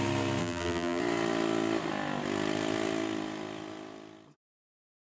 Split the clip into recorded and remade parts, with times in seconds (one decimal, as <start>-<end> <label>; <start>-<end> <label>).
0.0-0.4 recorded; 0.4-1.0 remade; 1.0-5.0 recorded